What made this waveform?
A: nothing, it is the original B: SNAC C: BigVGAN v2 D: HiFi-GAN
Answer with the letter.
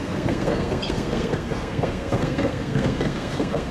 B